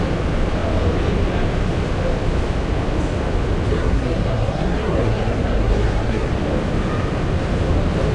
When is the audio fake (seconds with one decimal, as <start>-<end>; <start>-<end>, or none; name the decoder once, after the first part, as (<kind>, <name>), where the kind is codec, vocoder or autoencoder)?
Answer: 3.7-6.3 (codec, SNAC)